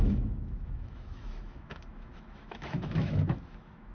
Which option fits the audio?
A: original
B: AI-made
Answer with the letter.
B